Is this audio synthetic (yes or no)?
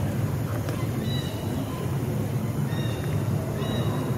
no